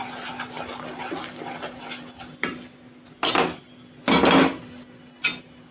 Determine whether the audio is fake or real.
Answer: real